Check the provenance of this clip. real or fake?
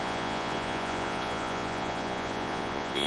fake